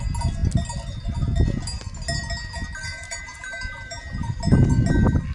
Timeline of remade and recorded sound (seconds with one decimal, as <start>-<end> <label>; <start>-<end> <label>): 0.0-2.9 recorded; 2.9-4.0 remade; 4.0-5.3 recorded